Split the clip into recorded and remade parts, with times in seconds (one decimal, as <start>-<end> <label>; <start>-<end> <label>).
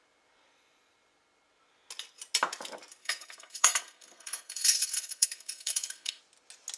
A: 0.0-3.0 recorded; 3.0-6.2 remade; 6.2-6.8 recorded